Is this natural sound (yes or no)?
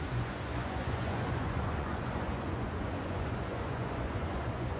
no